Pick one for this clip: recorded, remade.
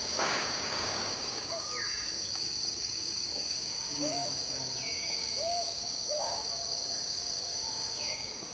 remade